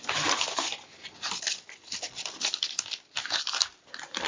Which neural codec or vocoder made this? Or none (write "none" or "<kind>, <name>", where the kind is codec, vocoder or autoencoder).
none